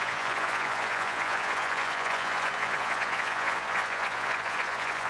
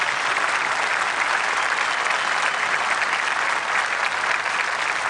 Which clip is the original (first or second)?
second